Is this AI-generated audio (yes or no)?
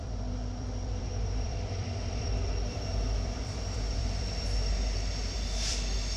yes